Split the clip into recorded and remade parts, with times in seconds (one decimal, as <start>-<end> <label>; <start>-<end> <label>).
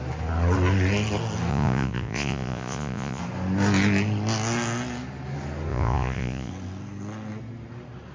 0.0-1.5 recorded; 1.5-3.2 remade; 3.2-5.7 recorded; 5.7-6.5 remade; 6.5-8.1 recorded